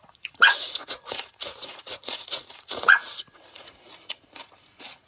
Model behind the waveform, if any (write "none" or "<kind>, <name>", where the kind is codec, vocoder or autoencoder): vocoder, Vocos